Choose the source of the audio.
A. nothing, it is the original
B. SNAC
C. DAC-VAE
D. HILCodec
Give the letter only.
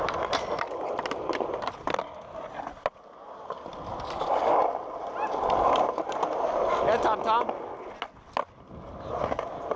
A